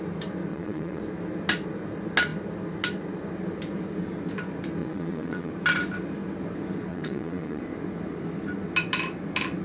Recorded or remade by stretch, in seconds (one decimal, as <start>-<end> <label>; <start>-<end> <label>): 0.0-0.5 recorded; 0.5-1.0 remade; 1.0-4.8 recorded; 4.8-5.5 remade; 5.5-6.9 recorded; 6.9-7.6 remade; 7.6-9.6 recorded